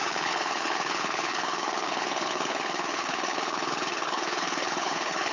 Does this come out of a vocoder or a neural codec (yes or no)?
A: yes